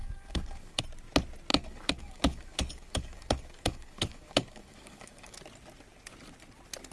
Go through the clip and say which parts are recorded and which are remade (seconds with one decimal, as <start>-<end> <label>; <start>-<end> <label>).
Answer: 0.0-0.8 remade; 0.8-1.5 recorded; 1.5-5.4 remade; 5.4-6.9 recorded